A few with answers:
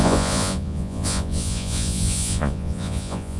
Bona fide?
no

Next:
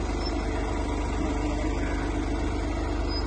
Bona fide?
yes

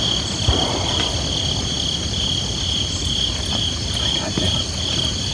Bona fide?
yes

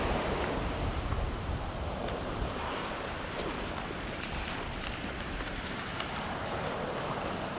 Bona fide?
no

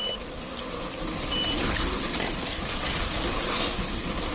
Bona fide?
yes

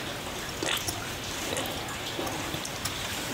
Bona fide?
yes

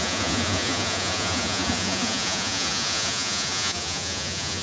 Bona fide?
no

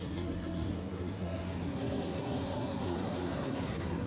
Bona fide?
no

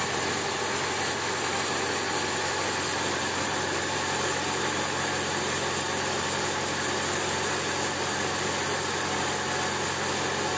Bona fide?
yes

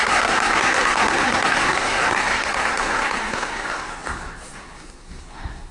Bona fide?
no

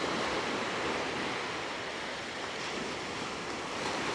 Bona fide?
yes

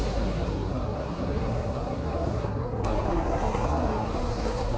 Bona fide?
no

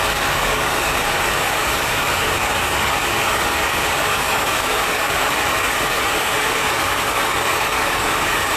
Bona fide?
no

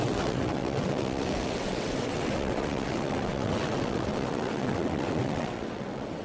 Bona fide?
no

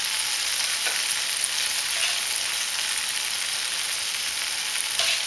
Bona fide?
yes